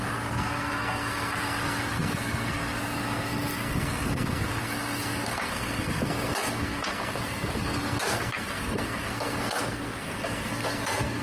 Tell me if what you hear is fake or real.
fake